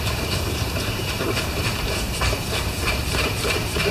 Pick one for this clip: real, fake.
fake